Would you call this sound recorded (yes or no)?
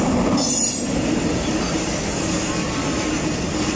yes